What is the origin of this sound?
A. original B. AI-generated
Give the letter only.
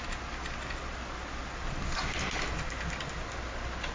A